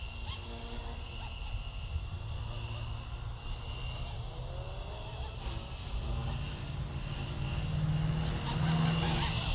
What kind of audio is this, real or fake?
real